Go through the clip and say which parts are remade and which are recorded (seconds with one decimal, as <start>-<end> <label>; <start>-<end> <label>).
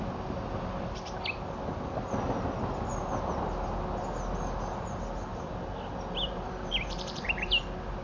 0.0-5.3 recorded; 5.3-7.6 remade; 7.6-8.0 recorded